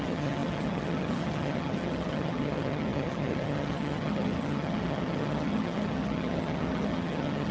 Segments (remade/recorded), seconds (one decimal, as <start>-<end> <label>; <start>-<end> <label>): 0.0-7.5 remade